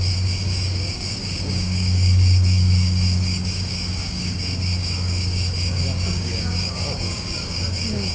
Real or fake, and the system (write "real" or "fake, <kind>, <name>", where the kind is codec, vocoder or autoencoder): fake, codec, DAC